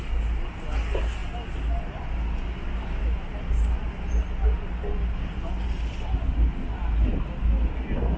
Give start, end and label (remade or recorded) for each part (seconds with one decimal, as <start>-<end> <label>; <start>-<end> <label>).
0.0-8.2 recorded